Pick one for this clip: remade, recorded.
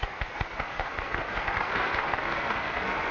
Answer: remade